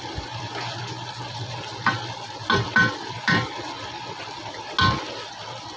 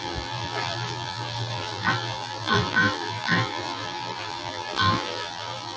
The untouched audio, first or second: first